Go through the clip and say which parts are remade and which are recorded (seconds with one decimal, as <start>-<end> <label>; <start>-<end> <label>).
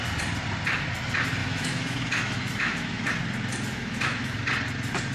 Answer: 0.0-1.4 recorded; 1.4-3.1 remade; 3.1-3.7 recorded; 3.7-4.4 remade; 4.4-5.1 recorded